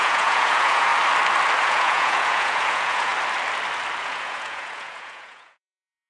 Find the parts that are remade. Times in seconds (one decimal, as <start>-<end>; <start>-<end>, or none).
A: 0.0-0.9; 1.6-3.1; 4.0-6.1